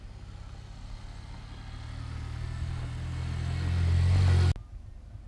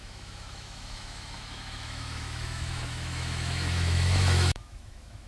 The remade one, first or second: second